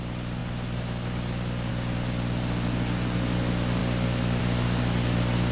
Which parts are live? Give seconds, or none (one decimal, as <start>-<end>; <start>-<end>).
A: 0.0-5.5